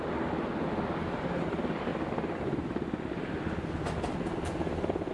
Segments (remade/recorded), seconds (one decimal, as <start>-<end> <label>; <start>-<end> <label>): 0.0-1.9 recorded; 1.9-5.1 remade